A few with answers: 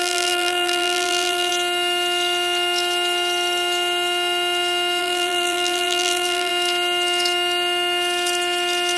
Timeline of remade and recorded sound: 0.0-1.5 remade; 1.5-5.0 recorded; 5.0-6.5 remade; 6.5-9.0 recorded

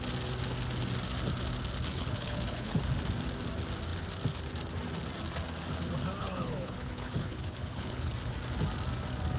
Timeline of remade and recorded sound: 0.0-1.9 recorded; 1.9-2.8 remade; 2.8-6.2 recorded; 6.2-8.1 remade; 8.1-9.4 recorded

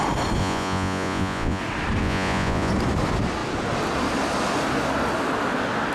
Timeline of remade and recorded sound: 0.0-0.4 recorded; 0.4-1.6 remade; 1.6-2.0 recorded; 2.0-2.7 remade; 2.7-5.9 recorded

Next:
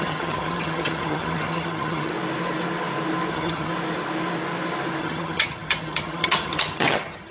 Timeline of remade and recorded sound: 0.0-2.1 remade; 2.1-3.3 recorded; 3.3-3.7 remade; 3.7-5.0 recorded; 5.0-7.3 remade

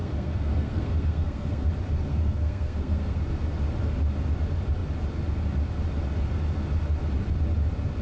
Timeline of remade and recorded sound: 0.0-1.7 remade; 1.7-2.1 recorded; 2.1-3.2 remade; 3.2-8.0 recorded

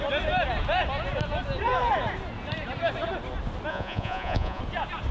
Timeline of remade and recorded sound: 0.0-3.7 recorded; 3.7-4.6 remade; 4.6-5.1 recorded

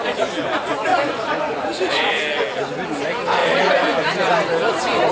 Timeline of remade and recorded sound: 0.0-0.9 recorded; 0.9-2.2 remade; 2.2-3.4 recorded; 3.4-4.6 remade; 4.6-5.1 recorded

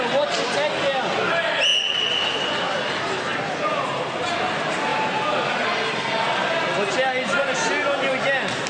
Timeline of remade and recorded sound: 0.0-8.7 recorded